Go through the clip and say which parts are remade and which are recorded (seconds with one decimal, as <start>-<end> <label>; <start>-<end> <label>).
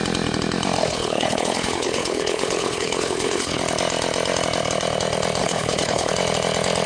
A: 0.0-0.8 recorded; 0.8-3.6 remade; 3.6-5.4 recorded; 5.4-6.1 remade; 6.1-6.9 recorded